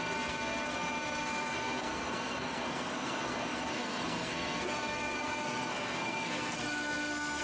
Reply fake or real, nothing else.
fake